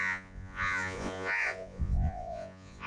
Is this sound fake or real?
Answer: fake